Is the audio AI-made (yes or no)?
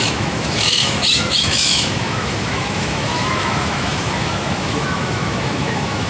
yes